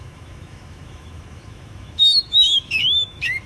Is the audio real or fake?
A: fake